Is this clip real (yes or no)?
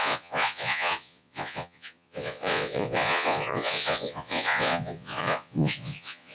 no